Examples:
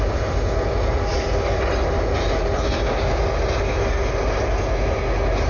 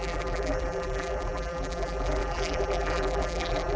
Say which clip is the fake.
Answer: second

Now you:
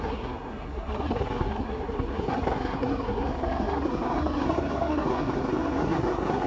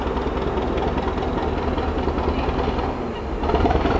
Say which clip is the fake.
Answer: first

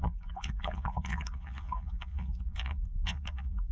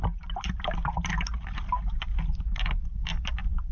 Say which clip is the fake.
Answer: first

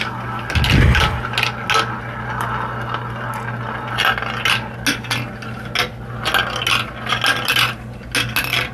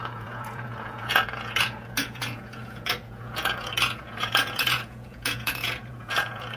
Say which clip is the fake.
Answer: second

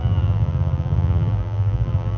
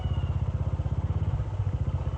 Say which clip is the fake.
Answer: first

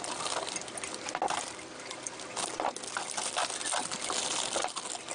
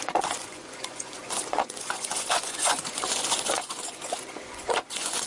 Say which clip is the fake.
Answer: second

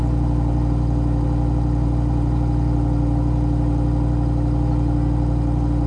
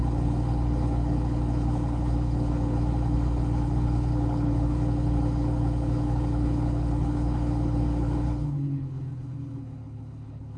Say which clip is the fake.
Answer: second